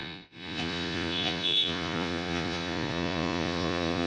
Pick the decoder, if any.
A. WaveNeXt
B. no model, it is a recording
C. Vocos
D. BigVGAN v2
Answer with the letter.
C